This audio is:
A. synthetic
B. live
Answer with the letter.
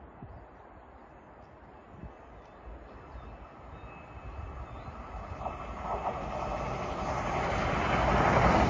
B